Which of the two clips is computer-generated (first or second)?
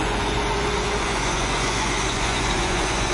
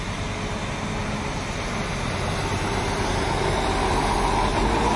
first